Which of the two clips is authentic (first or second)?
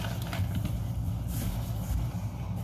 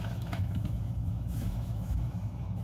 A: first